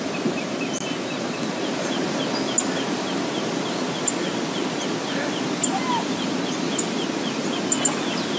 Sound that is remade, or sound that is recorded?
recorded